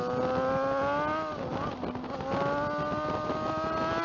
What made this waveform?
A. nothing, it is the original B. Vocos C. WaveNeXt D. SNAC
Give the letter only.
A